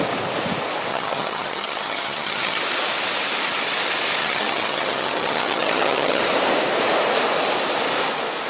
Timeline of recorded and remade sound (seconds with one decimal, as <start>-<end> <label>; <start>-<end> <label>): 0.0-0.9 recorded; 0.9-2.6 remade; 2.6-4.2 recorded; 4.2-6.2 remade; 6.2-8.5 recorded